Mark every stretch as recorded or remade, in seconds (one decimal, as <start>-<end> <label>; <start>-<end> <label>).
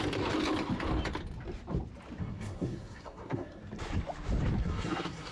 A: 0.0-2.2 recorded; 2.2-3.6 remade; 3.6-4.6 recorded; 4.6-5.3 remade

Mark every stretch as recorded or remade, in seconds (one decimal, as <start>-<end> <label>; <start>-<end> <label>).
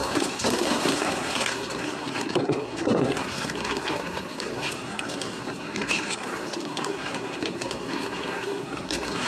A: 0.0-9.3 remade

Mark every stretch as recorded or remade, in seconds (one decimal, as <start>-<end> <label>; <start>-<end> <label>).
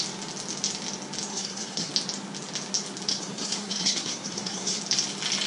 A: 0.0-1.3 recorded; 1.3-1.9 remade; 1.9-3.1 recorded; 3.1-4.8 remade; 4.8-5.5 recorded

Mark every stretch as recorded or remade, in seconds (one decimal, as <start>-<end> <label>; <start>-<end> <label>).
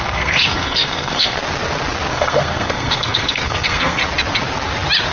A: 0.0-1.4 remade; 1.4-2.1 recorded; 2.1-4.0 remade; 4.0-5.1 recorded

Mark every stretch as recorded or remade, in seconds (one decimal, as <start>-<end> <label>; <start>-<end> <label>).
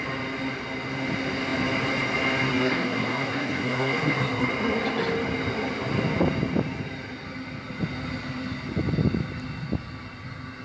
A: 0.0-2.5 recorded; 2.5-4.5 remade; 4.5-10.6 recorded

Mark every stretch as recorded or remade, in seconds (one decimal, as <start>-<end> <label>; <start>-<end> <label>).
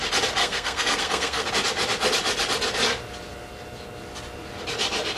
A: 0.0-0.4 recorded; 0.4-1.5 remade; 1.5-5.2 recorded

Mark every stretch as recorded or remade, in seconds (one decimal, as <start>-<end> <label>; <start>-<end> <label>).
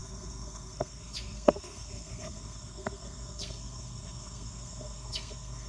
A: 0.0-5.7 remade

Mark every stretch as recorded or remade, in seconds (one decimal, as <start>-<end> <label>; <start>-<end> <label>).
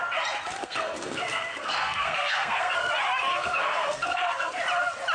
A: 0.0-0.6 recorded; 0.6-2.9 remade; 2.9-3.3 recorded; 3.3-4.5 remade; 4.5-5.1 recorded